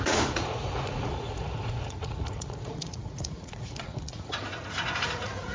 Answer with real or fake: fake